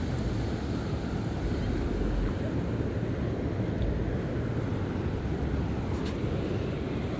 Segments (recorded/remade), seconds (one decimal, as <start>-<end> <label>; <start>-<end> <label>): 0.0-4.7 recorded; 4.7-5.4 remade; 5.4-7.2 recorded